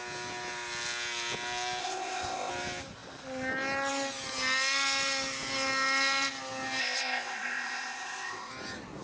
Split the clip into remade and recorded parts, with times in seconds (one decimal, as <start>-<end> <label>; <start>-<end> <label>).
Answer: 0.0-1.8 recorded; 1.8-2.5 remade; 2.5-6.8 recorded; 6.8-8.5 remade; 8.5-9.0 recorded